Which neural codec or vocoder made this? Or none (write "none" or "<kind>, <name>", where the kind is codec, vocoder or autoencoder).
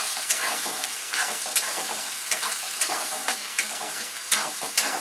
codec, SNAC